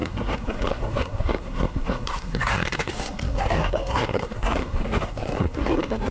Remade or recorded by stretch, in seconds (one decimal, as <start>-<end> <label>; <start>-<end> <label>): 0.0-6.1 remade